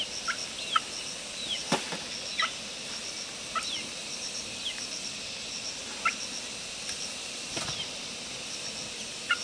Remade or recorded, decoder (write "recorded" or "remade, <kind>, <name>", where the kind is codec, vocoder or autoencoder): recorded